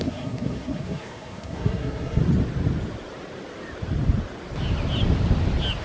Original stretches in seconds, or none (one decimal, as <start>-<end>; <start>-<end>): 2.2-5.8